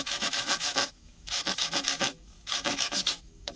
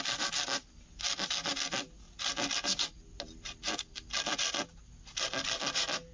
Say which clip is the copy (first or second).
first